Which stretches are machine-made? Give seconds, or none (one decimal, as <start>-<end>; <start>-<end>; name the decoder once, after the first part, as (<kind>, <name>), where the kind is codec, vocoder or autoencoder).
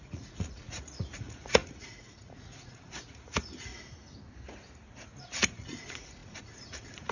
0.0-3.7 (vocoder, Vocos); 5.2-7.1